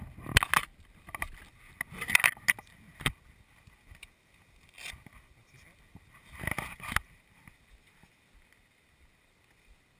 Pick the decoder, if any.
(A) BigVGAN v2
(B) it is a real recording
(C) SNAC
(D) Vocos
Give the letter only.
B